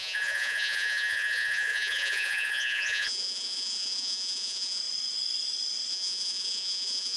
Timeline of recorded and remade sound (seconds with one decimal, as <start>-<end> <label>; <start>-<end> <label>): 0.0-4.8 remade; 4.8-5.9 recorded; 5.9-7.2 remade